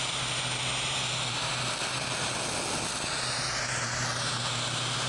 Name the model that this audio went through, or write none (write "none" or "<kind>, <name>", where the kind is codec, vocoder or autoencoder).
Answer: none